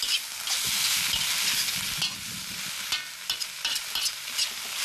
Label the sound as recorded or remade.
recorded